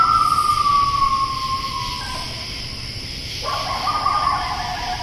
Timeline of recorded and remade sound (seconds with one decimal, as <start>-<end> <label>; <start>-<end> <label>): 0.0-5.0 recorded